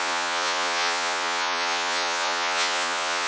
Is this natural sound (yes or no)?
no